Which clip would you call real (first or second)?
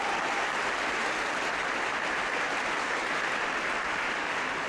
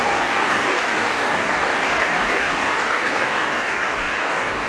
first